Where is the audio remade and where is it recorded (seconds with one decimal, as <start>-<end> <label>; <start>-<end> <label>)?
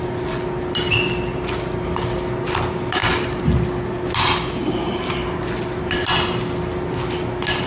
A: 0.0-7.7 recorded